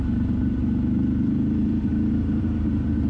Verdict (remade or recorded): remade